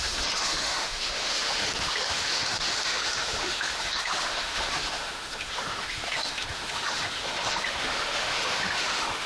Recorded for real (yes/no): no